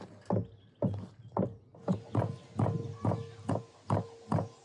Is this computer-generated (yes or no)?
no